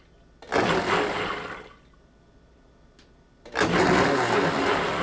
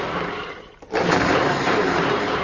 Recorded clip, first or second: first